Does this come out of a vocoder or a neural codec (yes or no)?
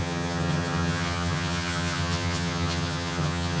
yes